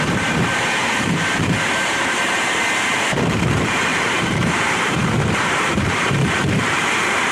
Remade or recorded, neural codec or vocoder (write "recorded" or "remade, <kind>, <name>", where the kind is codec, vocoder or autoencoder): remade, vocoder, BigVGAN v2